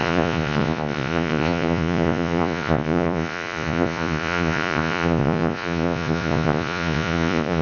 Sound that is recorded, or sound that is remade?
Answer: remade